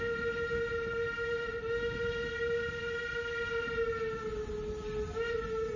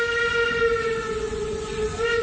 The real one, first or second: first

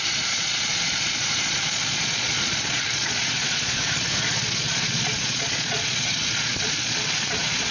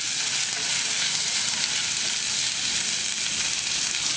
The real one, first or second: second